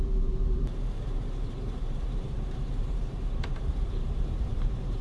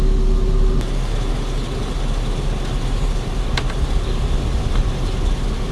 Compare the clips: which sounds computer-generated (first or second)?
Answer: first